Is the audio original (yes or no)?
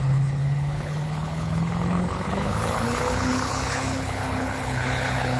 no